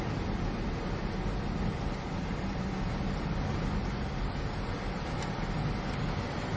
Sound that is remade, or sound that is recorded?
recorded